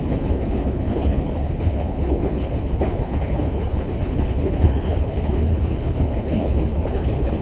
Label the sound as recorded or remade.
remade